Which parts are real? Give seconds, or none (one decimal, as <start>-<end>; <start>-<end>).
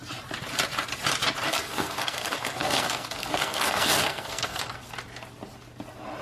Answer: 0.0-1.5; 4.9-6.2